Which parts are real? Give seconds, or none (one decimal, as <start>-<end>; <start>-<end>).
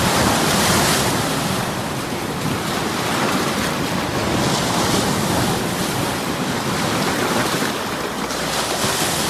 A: 4.2-6.1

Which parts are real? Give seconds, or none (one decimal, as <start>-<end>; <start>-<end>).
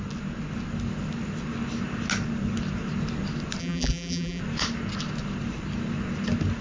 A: 0.0-3.6; 4.4-6.6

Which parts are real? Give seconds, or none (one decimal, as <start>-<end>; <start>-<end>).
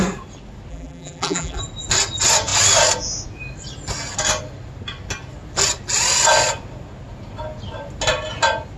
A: 0.0-0.7; 1.6-8.8